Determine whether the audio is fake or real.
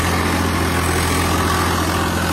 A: real